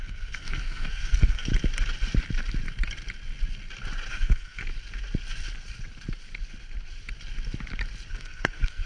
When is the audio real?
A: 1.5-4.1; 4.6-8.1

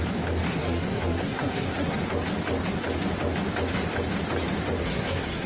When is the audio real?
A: 0.0-0.5; 2.0-4.8